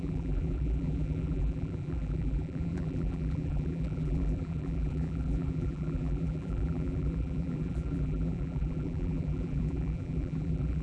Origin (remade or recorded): remade